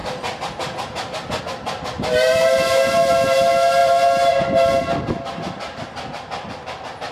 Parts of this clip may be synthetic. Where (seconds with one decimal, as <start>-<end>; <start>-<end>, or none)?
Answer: 0.0-1.4; 2.3-3.1; 3.8-4.7